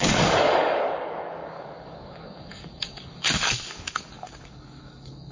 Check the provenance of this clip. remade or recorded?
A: remade